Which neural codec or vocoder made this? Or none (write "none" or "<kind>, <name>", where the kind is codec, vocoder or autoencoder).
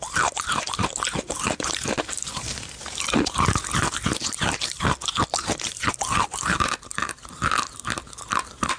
none